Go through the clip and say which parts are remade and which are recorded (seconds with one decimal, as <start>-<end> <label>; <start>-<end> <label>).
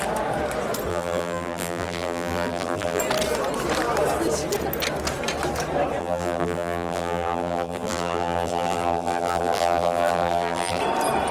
0.0-0.9 recorded; 0.9-3.0 remade; 3.0-6.0 recorded; 6.0-10.8 remade; 10.8-11.3 recorded